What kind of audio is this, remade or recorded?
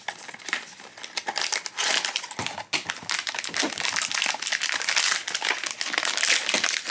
recorded